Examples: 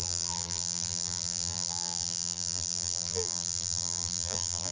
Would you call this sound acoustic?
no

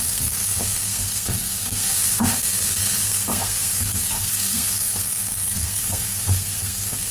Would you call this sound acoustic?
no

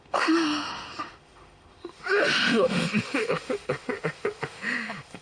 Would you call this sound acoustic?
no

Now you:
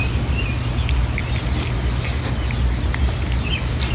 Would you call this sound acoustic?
yes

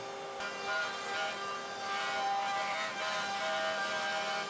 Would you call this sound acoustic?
yes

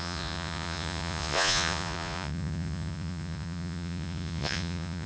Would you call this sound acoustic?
no